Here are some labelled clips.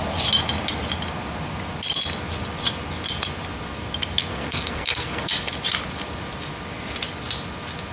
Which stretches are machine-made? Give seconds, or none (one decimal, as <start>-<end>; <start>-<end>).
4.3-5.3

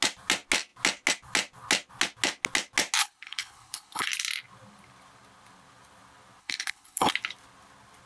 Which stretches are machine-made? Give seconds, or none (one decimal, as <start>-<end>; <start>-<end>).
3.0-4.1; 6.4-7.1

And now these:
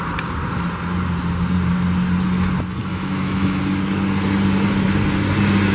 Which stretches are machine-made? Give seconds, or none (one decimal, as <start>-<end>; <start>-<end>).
2.9-3.6

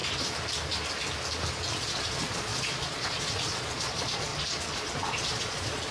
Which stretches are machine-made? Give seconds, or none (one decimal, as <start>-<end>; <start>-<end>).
1.7-4.3; 5.0-5.9

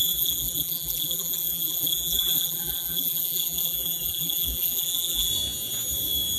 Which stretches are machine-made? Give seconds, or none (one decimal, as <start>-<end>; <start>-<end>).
0.0-5.3

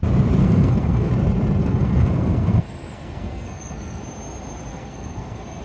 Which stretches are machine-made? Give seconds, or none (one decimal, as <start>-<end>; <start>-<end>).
0.4-1.1; 1.6-4.0; 4.7-5.6